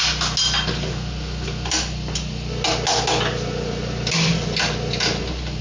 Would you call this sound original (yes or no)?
yes